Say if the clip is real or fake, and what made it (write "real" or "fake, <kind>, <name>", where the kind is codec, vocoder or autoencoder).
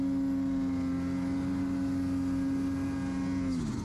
real